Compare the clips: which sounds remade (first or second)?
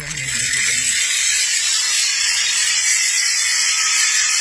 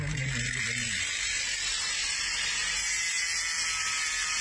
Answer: first